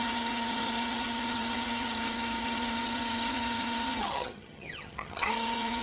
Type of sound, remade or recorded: remade